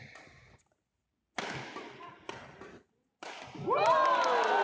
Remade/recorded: recorded